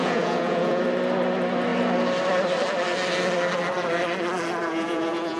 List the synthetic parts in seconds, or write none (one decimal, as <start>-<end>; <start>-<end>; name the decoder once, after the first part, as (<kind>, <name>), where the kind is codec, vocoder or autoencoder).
0.0-0.8 (vocoder, Vocos); 4.6-5.4